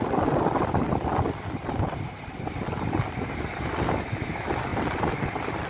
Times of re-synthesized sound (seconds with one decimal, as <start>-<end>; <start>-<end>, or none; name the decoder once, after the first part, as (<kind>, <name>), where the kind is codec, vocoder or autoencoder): none